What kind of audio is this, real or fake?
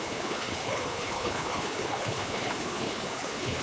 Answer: fake